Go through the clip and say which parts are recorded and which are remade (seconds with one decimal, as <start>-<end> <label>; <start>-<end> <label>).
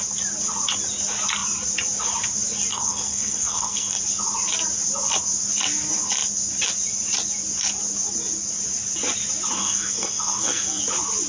0.0-2.7 recorded; 2.7-4.0 remade; 4.0-9.6 recorded; 9.6-10.8 remade; 10.8-11.3 recorded